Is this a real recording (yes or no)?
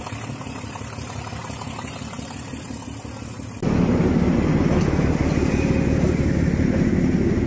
yes